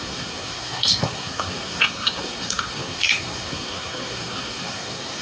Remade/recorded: remade